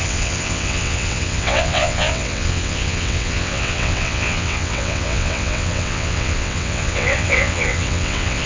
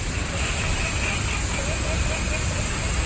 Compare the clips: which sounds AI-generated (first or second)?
first